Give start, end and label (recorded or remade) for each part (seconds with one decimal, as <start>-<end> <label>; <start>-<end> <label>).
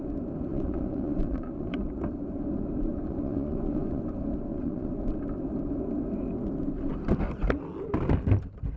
0.0-0.5 recorded; 0.5-1.8 remade; 1.8-2.9 recorded; 2.9-4.0 remade; 4.0-4.5 recorded; 4.5-5.0 remade; 5.0-8.8 recorded